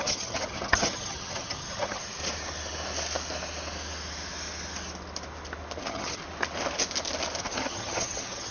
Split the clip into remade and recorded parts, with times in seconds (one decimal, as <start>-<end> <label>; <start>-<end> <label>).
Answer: 0.0-2.2 remade; 2.2-5.8 recorded; 5.8-6.2 remade; 6.2-7.4 recorded; 7.4-8.5 remade